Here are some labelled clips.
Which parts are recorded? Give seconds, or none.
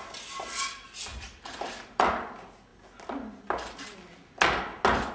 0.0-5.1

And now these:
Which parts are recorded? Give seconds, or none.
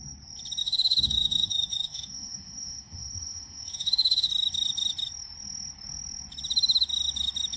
0.0-0.6; 4.3-7.6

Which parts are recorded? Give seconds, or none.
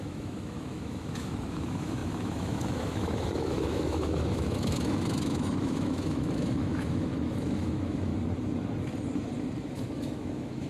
8.1-9.6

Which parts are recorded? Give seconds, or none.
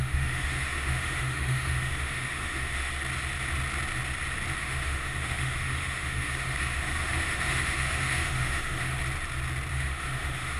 2.9-4.6; 9.0-9.7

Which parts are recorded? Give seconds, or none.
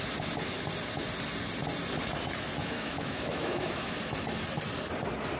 0.0-2.6; 3.9-5.4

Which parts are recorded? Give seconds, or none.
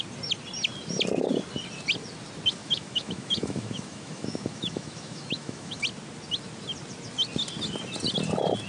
0.0-2.6; 5.8-8.7